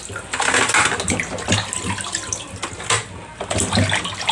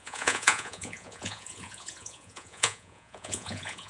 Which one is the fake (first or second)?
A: second